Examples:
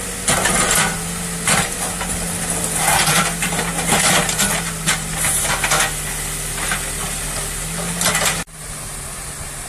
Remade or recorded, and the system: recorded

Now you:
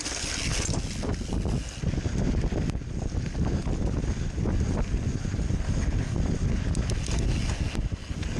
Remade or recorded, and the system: recorded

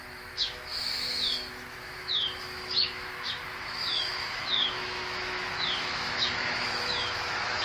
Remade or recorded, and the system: remade, autoencoder, DAC-VAE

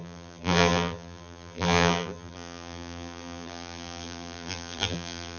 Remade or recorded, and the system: remade, vocoder, BigVGAN v2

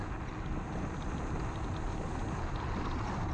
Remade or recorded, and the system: recorded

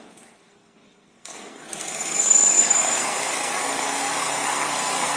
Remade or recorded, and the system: remade, codec, SNAC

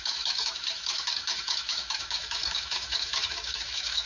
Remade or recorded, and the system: remade, autoencoder, DAC-VAE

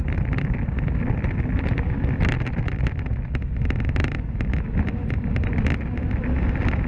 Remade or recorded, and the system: recorded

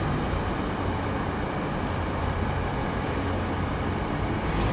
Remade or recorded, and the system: remade, vocoder, BigVGAN v2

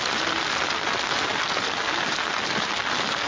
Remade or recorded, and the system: recorded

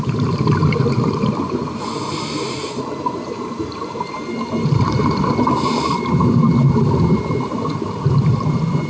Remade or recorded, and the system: remade, vocoder, BigVGAN v2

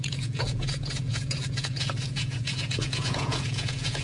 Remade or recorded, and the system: remade, vocoder, Vocos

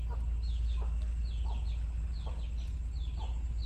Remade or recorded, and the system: recorded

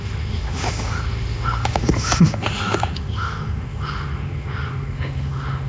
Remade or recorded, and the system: remade, autoencoder, DAC-VAE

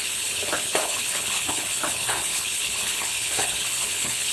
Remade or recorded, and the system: remade, codec, HILCodec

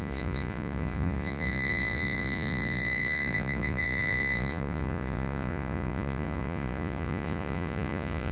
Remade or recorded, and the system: remade, vocoder, Vocos